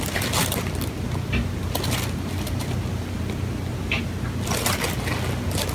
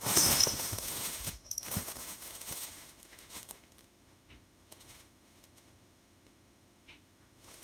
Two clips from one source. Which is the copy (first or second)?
second